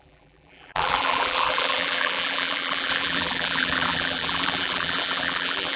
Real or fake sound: fake